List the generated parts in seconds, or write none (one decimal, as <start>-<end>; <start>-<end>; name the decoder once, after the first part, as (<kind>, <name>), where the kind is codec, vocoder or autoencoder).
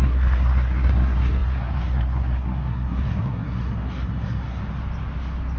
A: 0.0-4.6 (codec, SNAC)